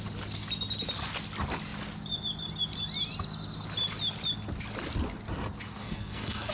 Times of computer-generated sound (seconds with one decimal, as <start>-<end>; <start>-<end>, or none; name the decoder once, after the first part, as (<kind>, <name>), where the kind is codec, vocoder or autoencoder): 5.8-6.5 (codec, SNAC)